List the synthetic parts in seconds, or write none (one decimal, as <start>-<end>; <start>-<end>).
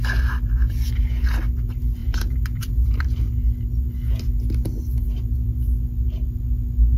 2.0-3.1